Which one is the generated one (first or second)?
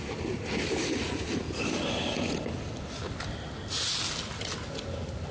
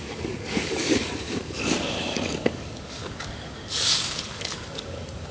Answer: second